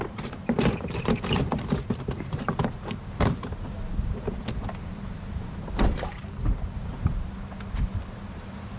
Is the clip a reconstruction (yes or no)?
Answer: yes